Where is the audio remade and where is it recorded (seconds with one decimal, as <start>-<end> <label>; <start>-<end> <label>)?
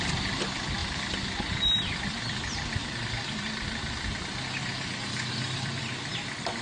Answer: 0.0-6.6 recorded